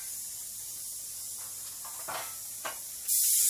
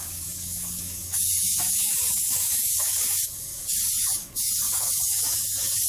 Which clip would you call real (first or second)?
first